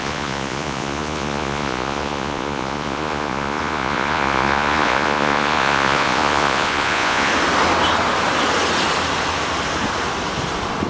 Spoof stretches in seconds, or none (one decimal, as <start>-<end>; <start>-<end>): 0.0-7.3